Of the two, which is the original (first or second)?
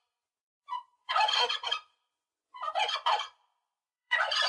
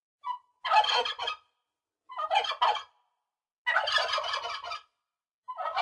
second